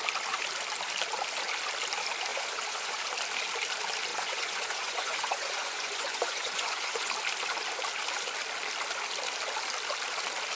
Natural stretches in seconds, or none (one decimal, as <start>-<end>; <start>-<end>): 0.0-2.3; 3.0-4.1; 7.1-10.6